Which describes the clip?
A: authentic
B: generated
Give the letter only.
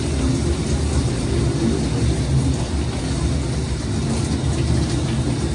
A